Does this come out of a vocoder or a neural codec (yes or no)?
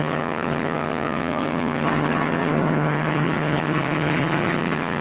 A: yes